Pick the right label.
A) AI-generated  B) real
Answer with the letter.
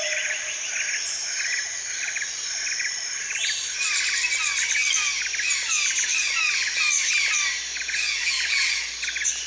B